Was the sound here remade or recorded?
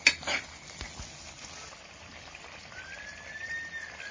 recorded